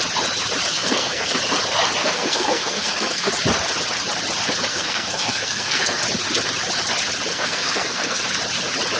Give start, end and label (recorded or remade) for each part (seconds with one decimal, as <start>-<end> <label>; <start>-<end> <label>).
0.0-0.7 recorded; 0.7-1.4 remade; 1.4-2.0 recorded; 2.0-3.3 remade; 3.3-4.7 recorded; 4.7-6.0 remade; 6.0-7.3 recorded; 7.3-8.2 remade; 8.2-9.0 recorded

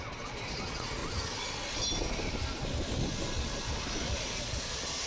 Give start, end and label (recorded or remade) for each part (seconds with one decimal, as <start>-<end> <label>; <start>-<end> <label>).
0.0-1.0 remade; 1.0-4.1 recorded; 4.1-5.1 remade

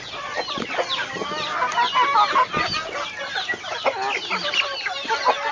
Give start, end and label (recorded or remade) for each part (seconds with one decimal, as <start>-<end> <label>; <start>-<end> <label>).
0.0-5.5 recorded

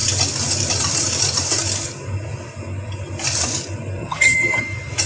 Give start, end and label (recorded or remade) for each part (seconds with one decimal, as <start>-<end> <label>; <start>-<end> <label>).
0.0-4.0 recorded; 4.0-4.6 remade; 4.6-5.1 recorded

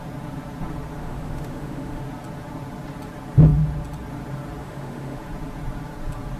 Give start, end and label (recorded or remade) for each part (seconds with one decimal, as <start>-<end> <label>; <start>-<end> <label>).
0.0-1.0 recorded; 1.0-2.0 remade; 2.0-4.6 recorded; 4.6-5.2 remade; 5.2-6.4 recorded